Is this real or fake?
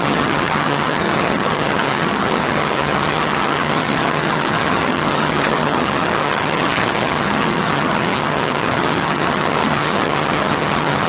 fake